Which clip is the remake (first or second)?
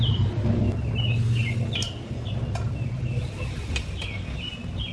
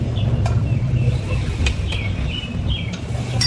second